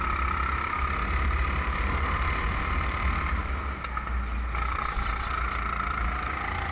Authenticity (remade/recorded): recorded